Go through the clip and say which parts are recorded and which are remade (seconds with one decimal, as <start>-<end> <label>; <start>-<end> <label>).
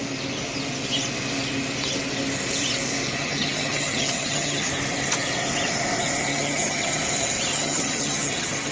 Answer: 0.0-3.2 recorded; 3.2-4.7 remade; 4.7-6.3 recorded; 6.3-7.0 remade; 7.0-7.5 recorded; 7.5-8.7 remade